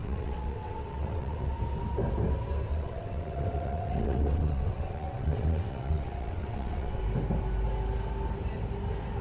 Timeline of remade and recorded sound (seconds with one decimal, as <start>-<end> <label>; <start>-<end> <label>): 0.0-1.5 remade; 1.5-2.7 recorded; 2.7-7.0 remade; 7.0-9.2 recorded